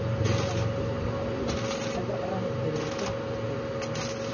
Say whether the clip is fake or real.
real